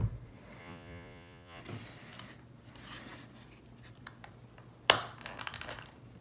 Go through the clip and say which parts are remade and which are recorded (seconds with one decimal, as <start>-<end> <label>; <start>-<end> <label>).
0.0-0.6 recorded; 0.6-1.6 remade; 1.6-6.2 recorded